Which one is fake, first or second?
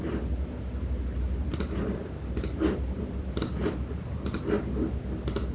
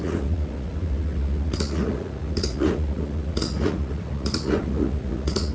second